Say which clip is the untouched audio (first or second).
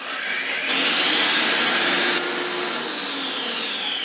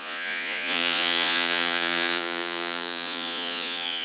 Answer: first